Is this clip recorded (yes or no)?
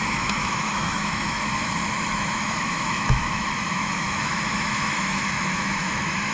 no